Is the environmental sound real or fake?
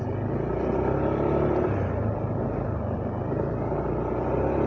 real